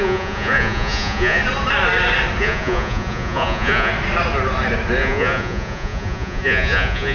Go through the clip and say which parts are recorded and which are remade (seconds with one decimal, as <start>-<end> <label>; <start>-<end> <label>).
0.0-1.4 remade; 1.4-2.4 recorded; 2.4-3.9 remade; 3.9-5.0 recorded; 5.0-7.1 remade